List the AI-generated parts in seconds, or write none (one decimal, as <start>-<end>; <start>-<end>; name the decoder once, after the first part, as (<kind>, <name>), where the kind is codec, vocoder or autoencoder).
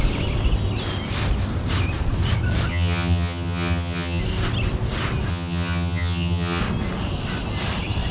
2.7-4.2 (vocoder, HiFi-GAN); 5.3-6.6